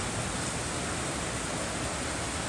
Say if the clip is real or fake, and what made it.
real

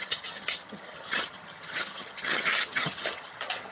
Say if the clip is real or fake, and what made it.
fake, vocoder, HiFi-GAN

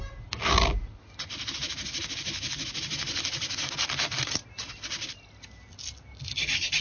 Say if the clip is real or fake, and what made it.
real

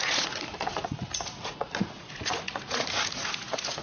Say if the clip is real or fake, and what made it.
fake, vocoder, Vocos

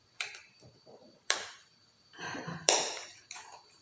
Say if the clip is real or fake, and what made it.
fake, vocoder, BigVGAN v2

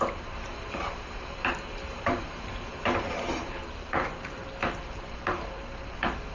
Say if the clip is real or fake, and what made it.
fake, vocoder, BigVGAN v2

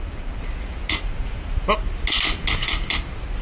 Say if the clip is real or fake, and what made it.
real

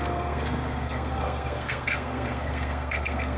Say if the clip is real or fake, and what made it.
fake, codec, SNAC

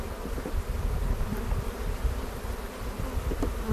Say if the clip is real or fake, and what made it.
real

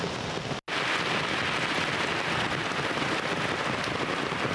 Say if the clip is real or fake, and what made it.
real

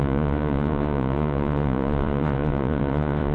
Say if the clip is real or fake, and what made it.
fake, vocoder, Vocos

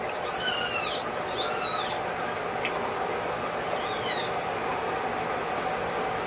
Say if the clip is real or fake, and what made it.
real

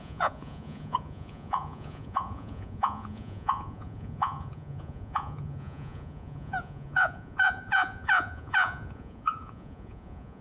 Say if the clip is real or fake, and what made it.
fake, vocoder, Vocos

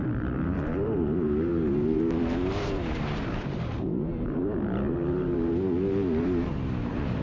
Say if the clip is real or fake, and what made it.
fake, vocoder, BigVGAN v2